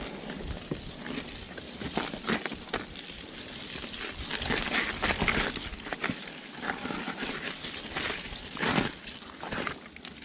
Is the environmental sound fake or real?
real